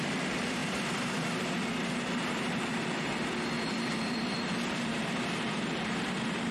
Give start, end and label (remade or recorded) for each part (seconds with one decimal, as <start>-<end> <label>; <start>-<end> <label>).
0.0-0.6 remade; 0.6-2.2 recorded; 2.2-2.7 remade; 2.7-3.6 recorded; 3.6-6.5 remade